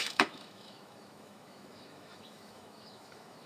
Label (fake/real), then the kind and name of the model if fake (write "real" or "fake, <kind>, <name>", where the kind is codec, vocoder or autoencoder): fake, autoencoder, DAC-VAE